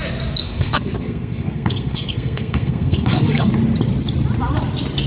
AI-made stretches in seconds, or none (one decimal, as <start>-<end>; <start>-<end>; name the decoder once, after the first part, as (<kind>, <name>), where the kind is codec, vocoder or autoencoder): 0.4-3.5 (codec, SNAC)